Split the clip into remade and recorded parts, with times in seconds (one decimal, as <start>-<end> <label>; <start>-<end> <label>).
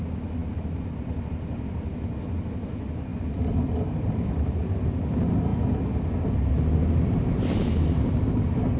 0.0-3.1 recorded; 3.1-4.9 remade; 4.9-8.8 recorded